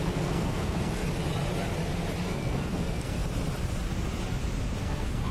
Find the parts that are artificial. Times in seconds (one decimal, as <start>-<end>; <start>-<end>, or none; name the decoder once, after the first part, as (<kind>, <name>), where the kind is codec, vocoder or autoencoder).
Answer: 0.0-1.0 (codec, SNAC); 2.3-3.2; 4.8-5.3